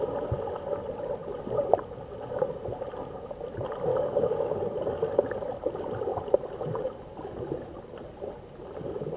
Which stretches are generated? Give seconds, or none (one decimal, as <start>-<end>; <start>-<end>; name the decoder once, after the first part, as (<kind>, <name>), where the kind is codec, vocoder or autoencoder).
3.9-4.6 (codec, DAC)